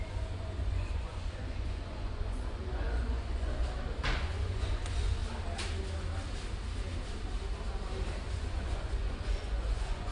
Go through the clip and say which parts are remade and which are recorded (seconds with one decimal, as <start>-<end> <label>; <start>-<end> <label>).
0.0-3.6 remade; 3.6-4.2 recorded; 4.2-5.2 remade; 5.2-8.3 recorded; 8.3-10.1 remade